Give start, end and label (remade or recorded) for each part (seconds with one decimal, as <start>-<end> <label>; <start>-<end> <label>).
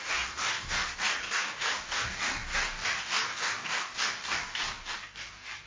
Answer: 0.0-5.7 remade